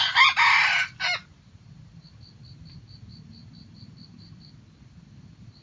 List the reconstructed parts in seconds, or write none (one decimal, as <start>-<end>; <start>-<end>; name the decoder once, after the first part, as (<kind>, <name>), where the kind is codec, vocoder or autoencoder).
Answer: none